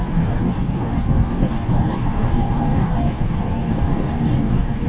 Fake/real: fake